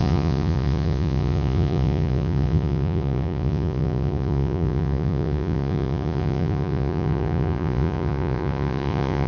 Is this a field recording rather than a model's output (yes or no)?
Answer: no